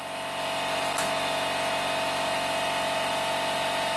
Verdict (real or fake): real